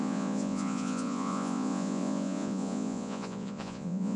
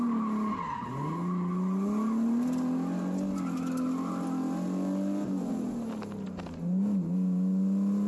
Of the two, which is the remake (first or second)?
first